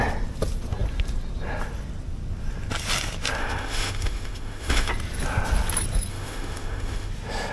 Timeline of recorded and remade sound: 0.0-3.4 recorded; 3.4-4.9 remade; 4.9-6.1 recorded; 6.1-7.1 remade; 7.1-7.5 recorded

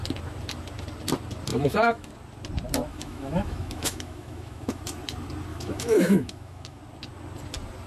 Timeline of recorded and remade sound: 0.0-1.5 recorded; 1.5-2.1 remade; 2.1-2.9 recorded; 2.9-4.8 remade; 4.8-5.5 recorded; 5.5-6.8 remade; 6.8-7.9 recorded